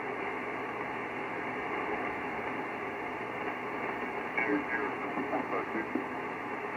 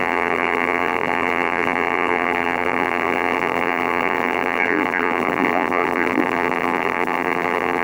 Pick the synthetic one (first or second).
second